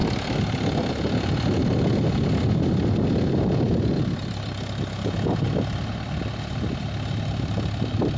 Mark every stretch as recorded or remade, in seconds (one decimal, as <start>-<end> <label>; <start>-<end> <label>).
0.0-8.2 recorded